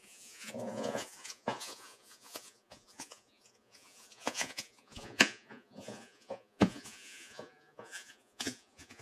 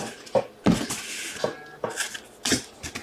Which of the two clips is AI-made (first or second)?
first